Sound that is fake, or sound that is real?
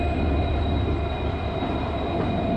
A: real